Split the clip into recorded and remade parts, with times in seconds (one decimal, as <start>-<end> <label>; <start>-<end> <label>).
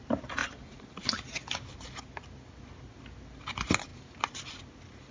0.0-5.1 recorded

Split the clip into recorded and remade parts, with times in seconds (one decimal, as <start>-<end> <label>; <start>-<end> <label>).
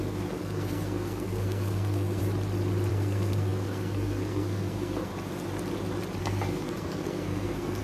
0.0-2.2 remade; 2.2-2.9 recorded; 2.9-5.1 remade; 5.1-6.2 recorded; 6.2-7.8 remade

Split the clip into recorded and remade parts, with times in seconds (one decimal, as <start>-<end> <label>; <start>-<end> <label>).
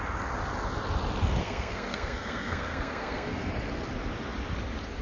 0.0-1.4 recorded; 1.4-3.5 remade; 3.5-5.0 recorded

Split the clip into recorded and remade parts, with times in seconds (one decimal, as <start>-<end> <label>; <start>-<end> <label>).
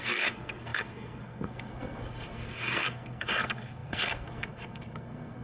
0.0-5.4 remade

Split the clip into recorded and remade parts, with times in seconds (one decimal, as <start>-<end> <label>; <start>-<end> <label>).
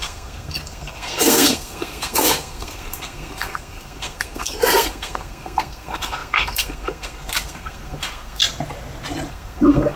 0.0-8.4 remade; 8.4-9.3 recorded; 9.3-10.0 remade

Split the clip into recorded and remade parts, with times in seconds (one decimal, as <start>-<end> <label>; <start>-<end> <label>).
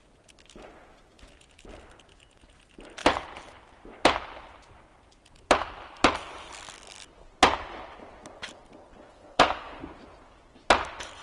0.0-9.1 recorded; 9.1-9.8 remade; 9.8-11.2 recorded